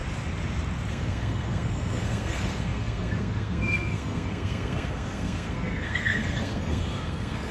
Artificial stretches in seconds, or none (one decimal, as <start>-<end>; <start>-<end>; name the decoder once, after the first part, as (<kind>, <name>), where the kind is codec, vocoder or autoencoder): 0.9-7.5 (codec, SNAC)